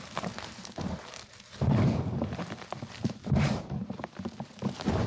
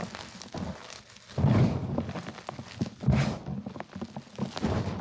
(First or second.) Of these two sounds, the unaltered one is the second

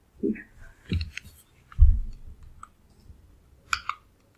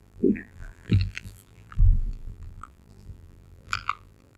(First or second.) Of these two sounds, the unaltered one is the first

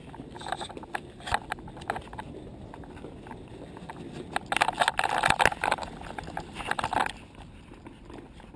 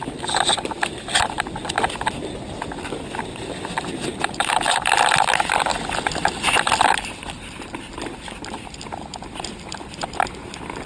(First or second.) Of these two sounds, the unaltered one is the first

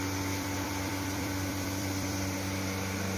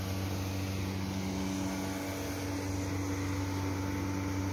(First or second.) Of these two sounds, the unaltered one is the second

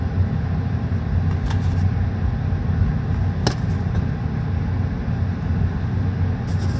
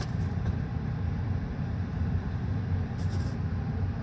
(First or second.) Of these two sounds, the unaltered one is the first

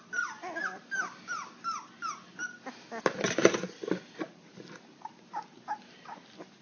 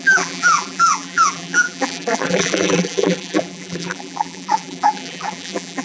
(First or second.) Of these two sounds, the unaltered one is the first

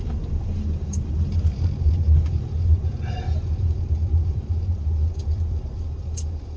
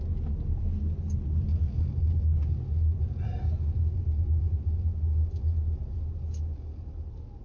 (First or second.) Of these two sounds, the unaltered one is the second